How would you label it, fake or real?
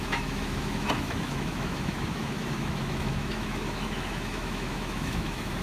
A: fake